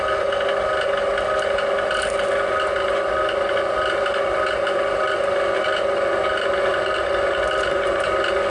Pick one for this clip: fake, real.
real